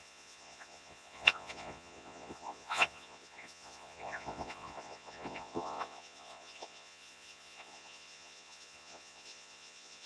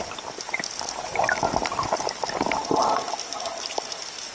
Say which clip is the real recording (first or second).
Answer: second